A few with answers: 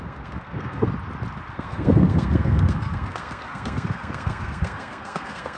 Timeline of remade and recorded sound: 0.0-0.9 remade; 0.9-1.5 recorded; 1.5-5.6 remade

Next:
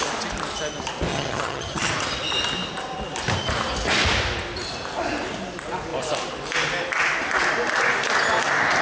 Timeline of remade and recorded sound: 0.0-1.1 recorded; 1.1-1.9 remade; 1.9-8.8 recorded

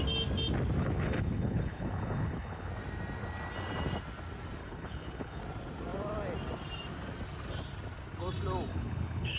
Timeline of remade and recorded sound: 0.0-0.8 recorded; 0.8-2.7 remade; 2.7-4.6 recorded; 4.6-5.4 remade; 5.4-8.7 recorded; 8.7-9.4 remade

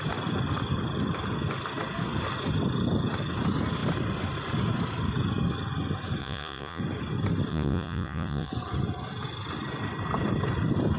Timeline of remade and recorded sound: 0.0-6.2 recorded; 6.2-6.8 remade; 6.8-7.5 recorded; 7.5-8.5 remade; 8.5-11.0 recorded

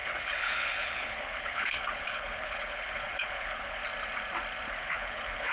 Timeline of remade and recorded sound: 0.0-3.8 remade; 3.8-4.7 recorded; 4.7-5.5 remade